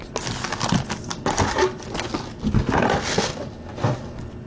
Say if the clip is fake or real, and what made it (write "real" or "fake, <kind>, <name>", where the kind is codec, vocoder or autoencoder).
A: real